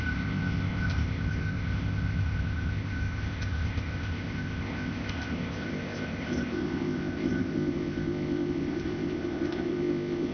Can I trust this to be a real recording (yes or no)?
no